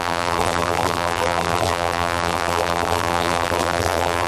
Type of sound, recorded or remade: remade